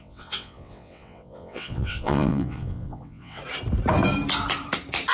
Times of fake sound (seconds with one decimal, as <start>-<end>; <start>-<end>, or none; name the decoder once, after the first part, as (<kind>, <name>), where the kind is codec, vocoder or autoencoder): 0.0-3.4 (vocoder, WaveNeXt)